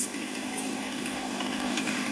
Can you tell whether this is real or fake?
fake